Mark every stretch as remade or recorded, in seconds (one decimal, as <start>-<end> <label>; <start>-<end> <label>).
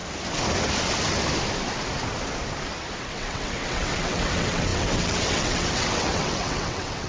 0.0-3.0 recorded; 3.0-7.1 remade